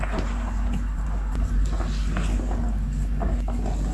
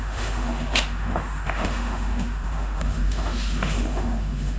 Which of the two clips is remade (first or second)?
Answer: second